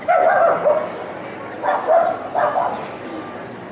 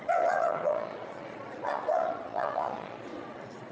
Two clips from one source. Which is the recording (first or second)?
first